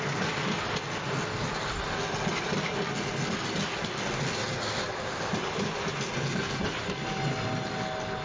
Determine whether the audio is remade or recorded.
recorded